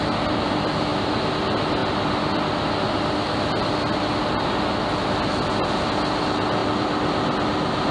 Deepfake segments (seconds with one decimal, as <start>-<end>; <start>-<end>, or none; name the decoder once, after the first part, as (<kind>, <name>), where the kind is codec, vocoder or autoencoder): none